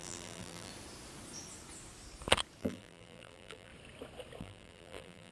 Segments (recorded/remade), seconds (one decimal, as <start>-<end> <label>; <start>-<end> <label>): 0.0-0.7 remade; 0.7-2.6 recorded; 2.6-3.7 remade; 3.7-4.4 recorded; 4.4-5.3 remade